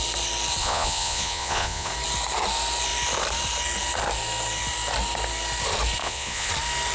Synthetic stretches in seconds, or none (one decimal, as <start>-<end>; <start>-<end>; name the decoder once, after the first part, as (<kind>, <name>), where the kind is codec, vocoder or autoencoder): 0.6-1.9 (vocoder, Vocos); 6.0-6.5